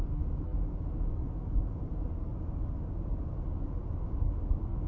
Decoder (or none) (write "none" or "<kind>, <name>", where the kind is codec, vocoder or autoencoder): none